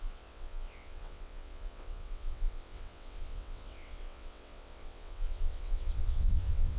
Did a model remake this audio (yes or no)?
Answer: yes